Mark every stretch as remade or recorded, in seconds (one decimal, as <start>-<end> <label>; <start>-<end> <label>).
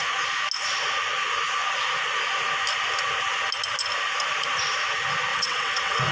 0.0-5.3 recorded; 5.3-6.1 remade